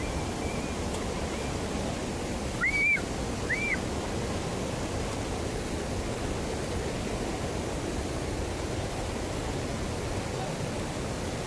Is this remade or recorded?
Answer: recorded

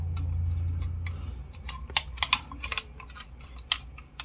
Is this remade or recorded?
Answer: recorded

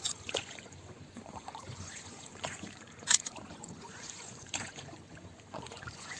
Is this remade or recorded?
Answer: remade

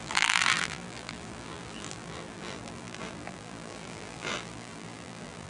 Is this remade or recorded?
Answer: remade